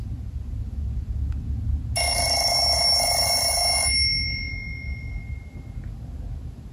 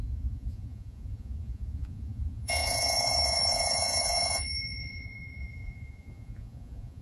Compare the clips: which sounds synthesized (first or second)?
second